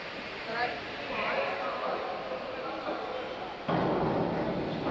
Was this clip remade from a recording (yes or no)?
no